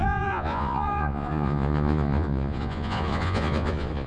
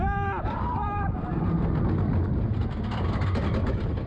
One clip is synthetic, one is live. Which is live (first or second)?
second